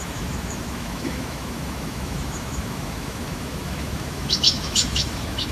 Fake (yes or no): yes